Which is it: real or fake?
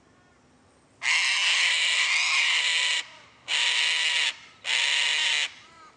real